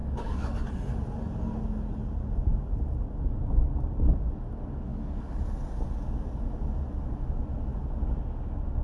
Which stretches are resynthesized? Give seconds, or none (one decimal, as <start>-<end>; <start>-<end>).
0.0-0.7; 4.9-5.4